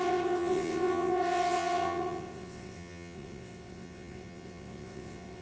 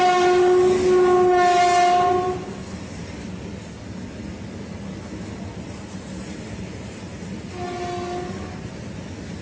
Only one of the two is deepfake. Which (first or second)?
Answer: first